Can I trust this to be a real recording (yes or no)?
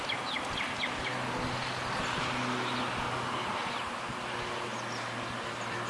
yes